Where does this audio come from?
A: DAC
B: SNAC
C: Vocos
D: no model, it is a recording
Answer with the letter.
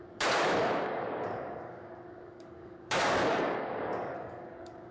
A